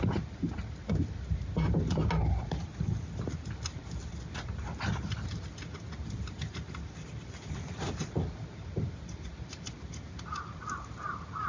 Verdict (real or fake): real